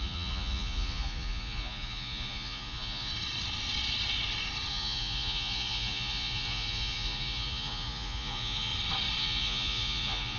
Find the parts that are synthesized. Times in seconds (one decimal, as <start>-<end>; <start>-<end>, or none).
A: 0.0-3.1; 4.7-8.7; 9.2-10.4